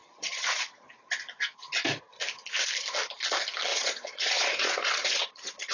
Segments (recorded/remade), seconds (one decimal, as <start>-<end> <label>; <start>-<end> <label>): 0.0-0.9 remade; 0.9-3.7 recorded; 3.7-5.7 remade